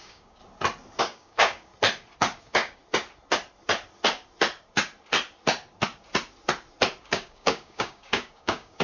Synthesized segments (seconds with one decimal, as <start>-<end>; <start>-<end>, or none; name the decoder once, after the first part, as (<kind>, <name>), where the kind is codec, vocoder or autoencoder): 0.0-0.4 (codec, DAC); 1.0-1.7; 2.4-2.8; 7.0-8.8